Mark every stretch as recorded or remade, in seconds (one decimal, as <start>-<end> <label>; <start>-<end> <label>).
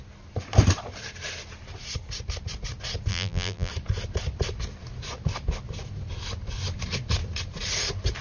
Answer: 0.0-3.1 recorded; 3.1-3.7 remade; 3.7-8.2 recorded